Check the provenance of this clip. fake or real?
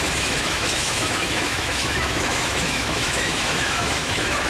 fake